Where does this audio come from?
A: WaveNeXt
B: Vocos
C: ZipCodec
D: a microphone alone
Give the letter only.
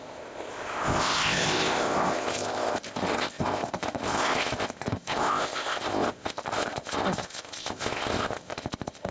C